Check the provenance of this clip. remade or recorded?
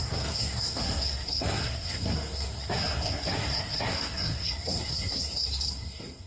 remade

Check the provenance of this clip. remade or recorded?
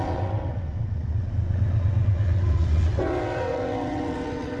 remade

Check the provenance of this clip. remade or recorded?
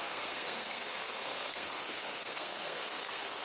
remade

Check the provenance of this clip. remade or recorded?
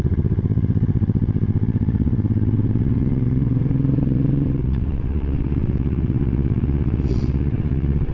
remade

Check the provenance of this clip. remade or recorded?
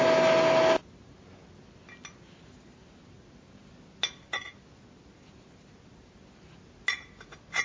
recorded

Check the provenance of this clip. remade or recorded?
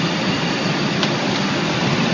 recorded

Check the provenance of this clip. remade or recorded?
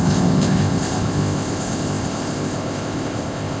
remade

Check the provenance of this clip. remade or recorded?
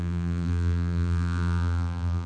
remade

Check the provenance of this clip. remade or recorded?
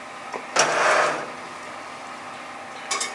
recorded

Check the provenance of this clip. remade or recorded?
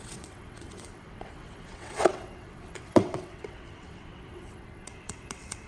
remade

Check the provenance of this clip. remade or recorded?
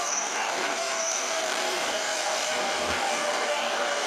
remade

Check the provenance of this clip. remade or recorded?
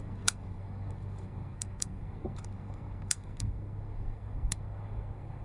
remade